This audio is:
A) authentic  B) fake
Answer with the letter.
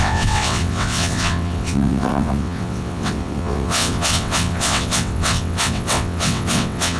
B